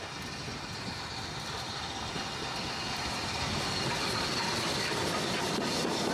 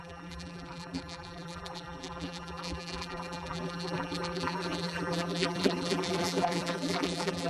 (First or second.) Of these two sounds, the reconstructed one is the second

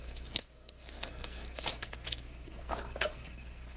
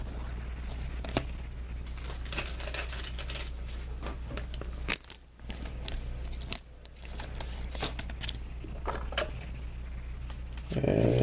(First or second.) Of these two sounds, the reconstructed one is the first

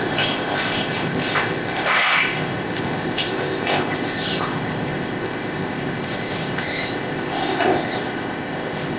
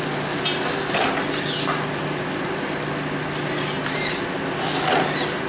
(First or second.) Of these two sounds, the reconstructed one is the first